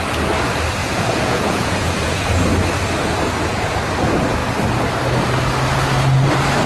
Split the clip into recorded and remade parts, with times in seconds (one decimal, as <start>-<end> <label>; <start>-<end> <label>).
0.0-0.8 recorded; 0.8-2.4 remade; 2.4-6.7 recorded